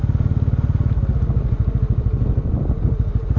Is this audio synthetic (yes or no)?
no